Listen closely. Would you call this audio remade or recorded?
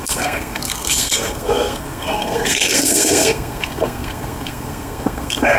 remade